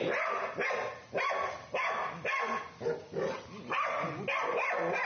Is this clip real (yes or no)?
yes